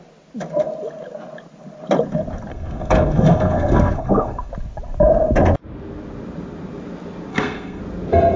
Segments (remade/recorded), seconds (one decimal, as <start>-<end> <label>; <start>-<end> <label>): 0.0-2.5 recorded; 2.5-4.5 remade; 4.5-7.3 recorded; 7.3-7.8 remade; 7.8-8.4 recorded